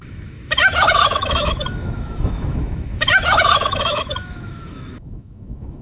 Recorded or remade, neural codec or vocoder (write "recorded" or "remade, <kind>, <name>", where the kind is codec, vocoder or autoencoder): remade, autoencoder, DAC-VAE